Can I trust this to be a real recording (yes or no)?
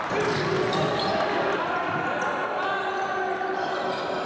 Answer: yes